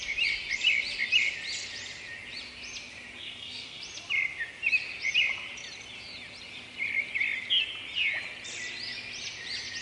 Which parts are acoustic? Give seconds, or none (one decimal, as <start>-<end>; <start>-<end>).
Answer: 0.0-3.2; 3.8-9.8